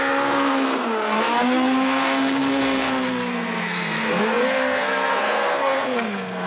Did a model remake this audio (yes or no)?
yes